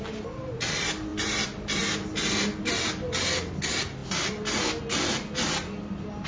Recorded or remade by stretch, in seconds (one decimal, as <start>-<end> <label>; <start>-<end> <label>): 0.0-6.3 recorded

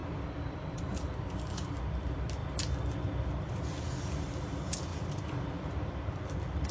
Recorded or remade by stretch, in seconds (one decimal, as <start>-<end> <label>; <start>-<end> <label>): 0.0-6.7 recorded

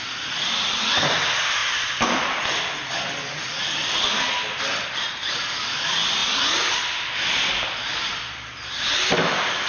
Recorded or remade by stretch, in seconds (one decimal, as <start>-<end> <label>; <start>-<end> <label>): 0.0-9.7 recorded

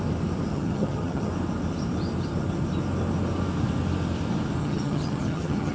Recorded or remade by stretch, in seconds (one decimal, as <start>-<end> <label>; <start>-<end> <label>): 0.0-0.5 recorded; 0.5-1.3 remade; 1.3-4.6 recorded; 4.6-5.7 remade

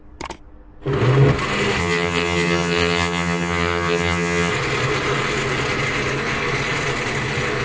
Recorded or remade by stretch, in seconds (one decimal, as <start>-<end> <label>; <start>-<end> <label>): 0.0-1.8 recorded; 1.8-4.5 remade; 4.5-7.6 recorded